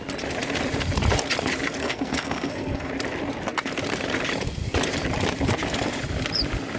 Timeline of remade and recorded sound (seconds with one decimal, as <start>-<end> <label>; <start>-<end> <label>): 0.0-1.8 recorded; 1.8-2.9 remade; 2.9-6.8 recorded